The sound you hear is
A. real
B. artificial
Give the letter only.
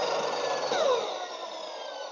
B